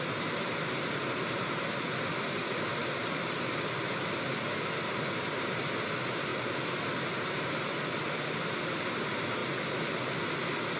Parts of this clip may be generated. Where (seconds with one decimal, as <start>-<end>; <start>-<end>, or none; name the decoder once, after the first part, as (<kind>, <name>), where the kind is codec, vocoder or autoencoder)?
none